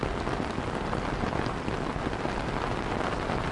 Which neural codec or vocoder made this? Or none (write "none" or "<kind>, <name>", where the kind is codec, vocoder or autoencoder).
none